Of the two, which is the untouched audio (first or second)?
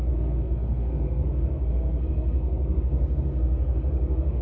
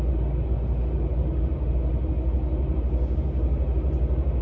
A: second